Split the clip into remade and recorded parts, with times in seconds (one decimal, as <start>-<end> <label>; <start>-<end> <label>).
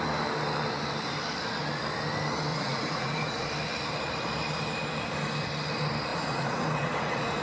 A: 0.0-2.5 recorded; 2.5-3.5 remade; 3.5-6.1 recorded; 6.1-7.4 remade